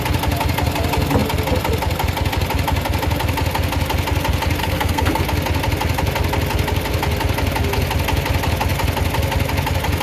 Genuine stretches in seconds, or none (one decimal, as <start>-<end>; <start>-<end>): 0.0-4.6; 5.2-10.0